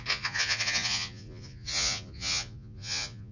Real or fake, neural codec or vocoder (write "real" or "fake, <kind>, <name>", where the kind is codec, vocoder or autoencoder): fake, vocoder, Vocos